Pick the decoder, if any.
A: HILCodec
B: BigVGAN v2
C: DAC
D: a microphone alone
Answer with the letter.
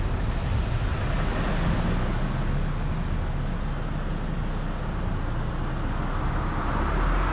D